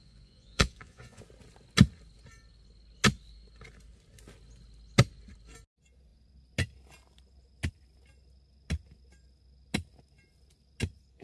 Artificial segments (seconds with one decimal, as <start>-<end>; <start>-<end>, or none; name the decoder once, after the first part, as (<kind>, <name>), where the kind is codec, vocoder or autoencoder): 0.0-1.2 (vocoder, Vocos)